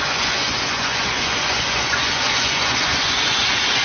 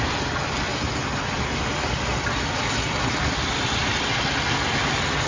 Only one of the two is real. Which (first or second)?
second